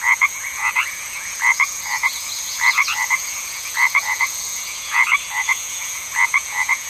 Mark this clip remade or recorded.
remade